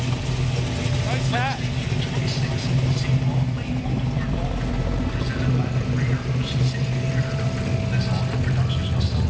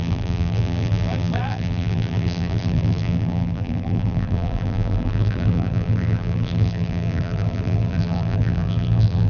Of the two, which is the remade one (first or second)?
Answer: second